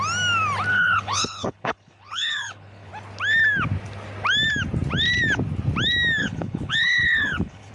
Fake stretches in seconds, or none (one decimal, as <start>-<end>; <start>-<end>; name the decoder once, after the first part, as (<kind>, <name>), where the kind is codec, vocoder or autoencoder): 0.7-2.9 (codec, HILCodec); 6.2-7.7